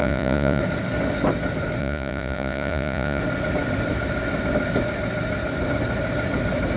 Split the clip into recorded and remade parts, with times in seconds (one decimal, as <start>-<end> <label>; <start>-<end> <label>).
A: 0.0-0.6 remade; 0.6-1.8 recorded; 1.8-3.2 remade; 3.2-6.8 recorded